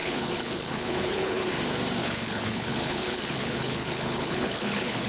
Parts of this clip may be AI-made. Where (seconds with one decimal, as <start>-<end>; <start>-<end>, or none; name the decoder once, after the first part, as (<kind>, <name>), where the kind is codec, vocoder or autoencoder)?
0.0-1.5 (codec, HILCodec); 2.0-5.1